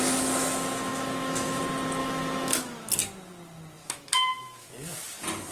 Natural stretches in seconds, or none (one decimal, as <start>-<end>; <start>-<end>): 0.0-0.9; 1.6-2.0; 2.9-3.8; 4.7-5.5